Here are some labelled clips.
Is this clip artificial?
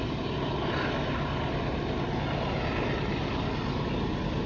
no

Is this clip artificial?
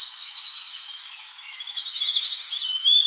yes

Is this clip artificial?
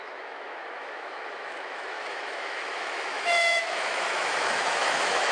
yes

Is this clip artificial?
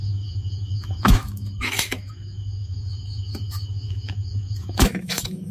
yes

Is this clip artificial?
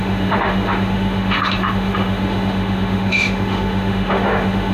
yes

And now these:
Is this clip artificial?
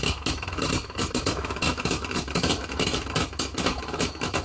yes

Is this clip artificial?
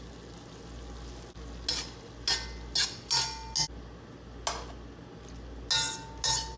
no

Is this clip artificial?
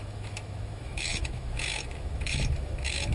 yes